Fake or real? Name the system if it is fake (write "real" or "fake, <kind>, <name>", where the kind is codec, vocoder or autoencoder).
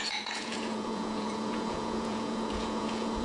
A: fake, vocoder, Vocos